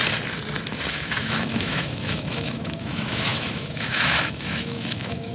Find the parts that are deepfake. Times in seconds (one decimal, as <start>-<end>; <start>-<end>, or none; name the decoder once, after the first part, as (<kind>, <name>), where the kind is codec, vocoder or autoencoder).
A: 0.9-5.3 (autoencoder, DAC-VAE)